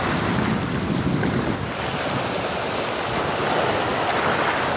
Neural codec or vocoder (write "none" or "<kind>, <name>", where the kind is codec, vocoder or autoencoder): none